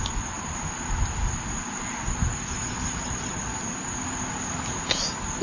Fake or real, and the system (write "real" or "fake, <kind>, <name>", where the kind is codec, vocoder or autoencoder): real